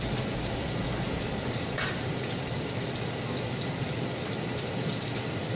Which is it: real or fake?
real